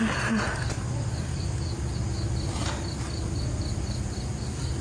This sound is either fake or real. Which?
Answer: real